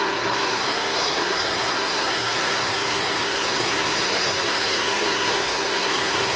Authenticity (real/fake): fake